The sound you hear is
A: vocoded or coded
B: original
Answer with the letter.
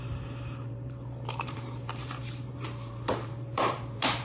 A